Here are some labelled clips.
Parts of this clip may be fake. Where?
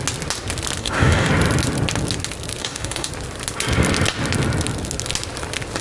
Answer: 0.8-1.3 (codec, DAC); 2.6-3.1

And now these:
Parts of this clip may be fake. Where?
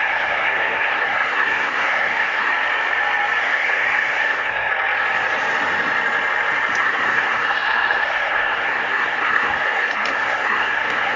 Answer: 0.0-2.5 (codec, SNAC); 3.4-4.7; 6.8-11.2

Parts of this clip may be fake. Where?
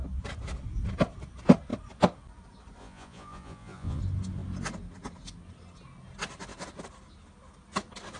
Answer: 2.8-4.0 (vocoder, Vocos)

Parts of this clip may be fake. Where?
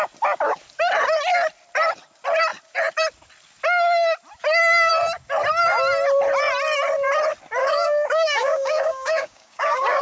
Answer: 7.6-10.0 (codec, DAC)